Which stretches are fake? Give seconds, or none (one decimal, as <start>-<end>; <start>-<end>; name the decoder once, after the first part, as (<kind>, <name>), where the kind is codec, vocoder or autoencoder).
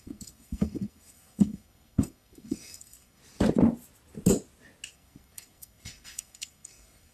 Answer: 0.0-3.2 (codec, SNAC); 4.9-7.1